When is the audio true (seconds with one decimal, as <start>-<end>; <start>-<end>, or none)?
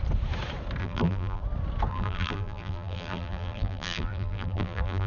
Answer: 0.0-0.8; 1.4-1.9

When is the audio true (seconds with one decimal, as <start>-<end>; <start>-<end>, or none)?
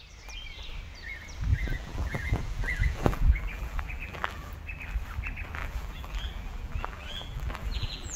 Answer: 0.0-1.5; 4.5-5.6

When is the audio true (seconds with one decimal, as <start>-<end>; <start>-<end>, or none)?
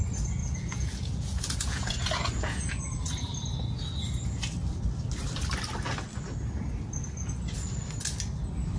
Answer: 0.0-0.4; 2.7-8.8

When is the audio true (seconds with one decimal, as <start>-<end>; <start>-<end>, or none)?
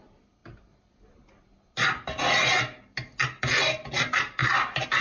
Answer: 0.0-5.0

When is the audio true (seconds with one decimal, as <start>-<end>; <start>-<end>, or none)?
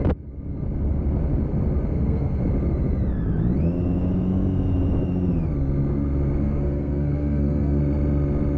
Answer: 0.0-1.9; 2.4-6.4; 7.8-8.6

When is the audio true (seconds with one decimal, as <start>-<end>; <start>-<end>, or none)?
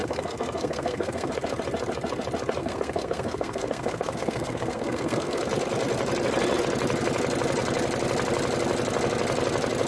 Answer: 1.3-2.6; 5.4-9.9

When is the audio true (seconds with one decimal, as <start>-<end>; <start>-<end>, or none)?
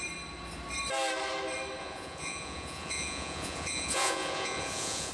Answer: 0.0-1.8